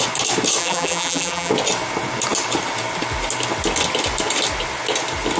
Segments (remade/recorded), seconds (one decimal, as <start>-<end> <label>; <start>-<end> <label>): 0.0-0.6 recorded; 0.6-1.5 remade; 1.5-5.4 recorded